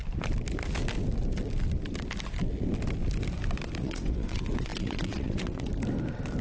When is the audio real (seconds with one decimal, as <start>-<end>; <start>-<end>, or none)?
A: 0.0-3.8; 5.7-6.4